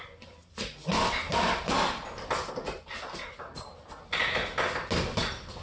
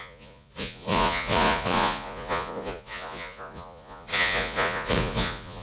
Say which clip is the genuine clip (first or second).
first